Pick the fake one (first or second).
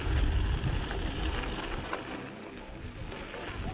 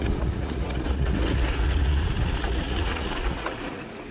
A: second